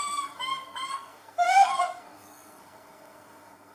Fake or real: fake